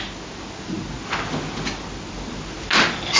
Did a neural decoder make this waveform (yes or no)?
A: no